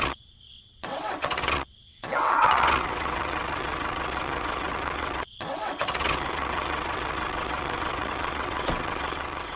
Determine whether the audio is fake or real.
fake